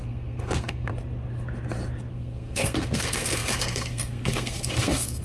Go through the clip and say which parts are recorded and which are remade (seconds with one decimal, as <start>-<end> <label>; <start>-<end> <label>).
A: 0.0-0.9 remade; 0.9-2.1 recorded; 2.1-5.2 remade